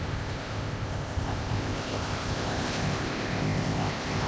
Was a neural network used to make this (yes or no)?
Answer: yes